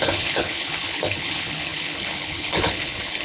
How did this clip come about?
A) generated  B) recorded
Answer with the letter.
A